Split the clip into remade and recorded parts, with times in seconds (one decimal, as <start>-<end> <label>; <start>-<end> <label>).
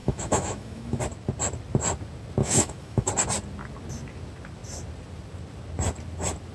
0.0-1.0 remade; 1.0-2.4 recorded; 2.4-3.1 remade; 3.1-6.5 recorded